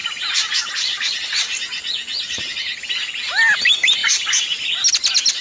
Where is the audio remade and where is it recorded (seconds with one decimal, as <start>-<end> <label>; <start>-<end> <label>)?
0.0-5.4 recorded